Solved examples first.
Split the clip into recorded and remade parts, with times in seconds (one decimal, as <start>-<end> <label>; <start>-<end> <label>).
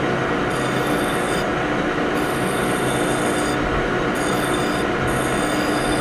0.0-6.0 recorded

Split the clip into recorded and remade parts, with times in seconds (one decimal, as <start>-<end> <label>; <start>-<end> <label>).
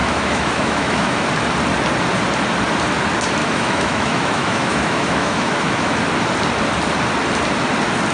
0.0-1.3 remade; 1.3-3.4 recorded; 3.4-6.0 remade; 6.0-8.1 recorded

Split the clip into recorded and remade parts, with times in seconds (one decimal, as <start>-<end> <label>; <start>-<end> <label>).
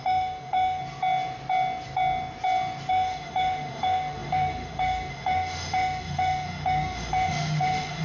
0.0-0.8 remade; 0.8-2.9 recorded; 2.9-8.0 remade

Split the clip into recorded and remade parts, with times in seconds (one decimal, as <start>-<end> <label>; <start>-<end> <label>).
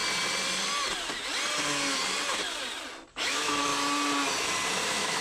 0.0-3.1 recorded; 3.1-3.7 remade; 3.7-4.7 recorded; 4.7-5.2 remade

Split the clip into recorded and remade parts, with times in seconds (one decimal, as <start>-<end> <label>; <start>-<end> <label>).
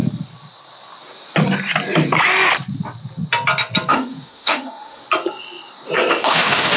0.0-3.9 recorded; 3.9-5.0 remade; 5.0-6.1 recorded; 6.1-6.8 remade